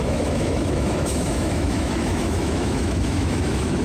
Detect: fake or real fake